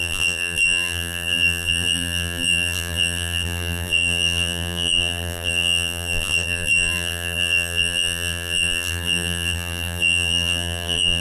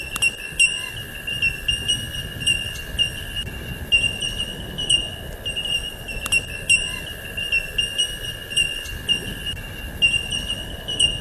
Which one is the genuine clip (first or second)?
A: second